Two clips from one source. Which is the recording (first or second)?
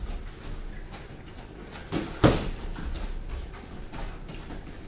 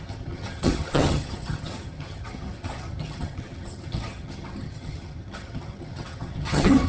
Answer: first